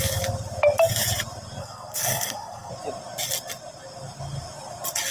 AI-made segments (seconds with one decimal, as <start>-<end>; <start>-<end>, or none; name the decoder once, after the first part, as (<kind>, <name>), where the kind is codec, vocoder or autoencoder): 1.6-2.7 (codec, SNAC)